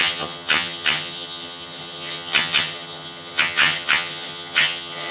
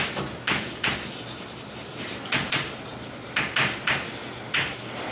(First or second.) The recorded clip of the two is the second